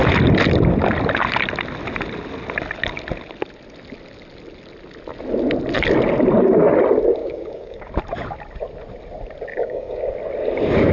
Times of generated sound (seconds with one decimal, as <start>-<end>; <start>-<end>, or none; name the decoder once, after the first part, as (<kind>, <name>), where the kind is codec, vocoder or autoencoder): 7.2-7.9 (codec, DAC); 9.5-10.1